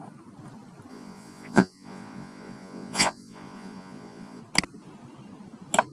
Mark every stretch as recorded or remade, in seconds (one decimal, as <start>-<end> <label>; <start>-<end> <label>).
0.0-0.9 recorded; 0.9-4.4 remade; 4.4-5.9 recorded